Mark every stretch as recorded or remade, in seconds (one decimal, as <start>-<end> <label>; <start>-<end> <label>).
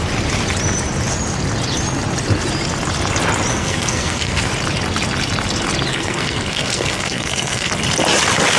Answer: 0.0-3.5 recorded; 3.5-4.5 remade; 4.5-5.9 recorded; 5.9-7.7 remade; 7.7-8.6 recorded